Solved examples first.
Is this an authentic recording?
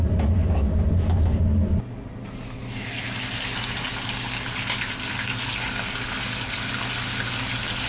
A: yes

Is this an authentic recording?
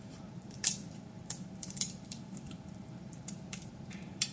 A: no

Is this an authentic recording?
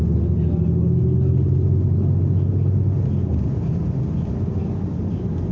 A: yes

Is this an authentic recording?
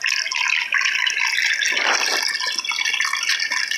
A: yes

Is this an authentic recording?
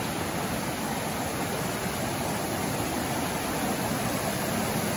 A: no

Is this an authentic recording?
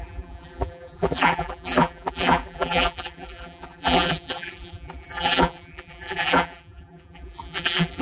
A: no